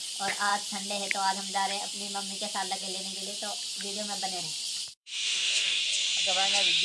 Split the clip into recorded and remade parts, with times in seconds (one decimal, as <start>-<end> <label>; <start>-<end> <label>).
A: 0.0-5.0 recorded; 5.0-5.8 remade; 5.8-6.8 recorded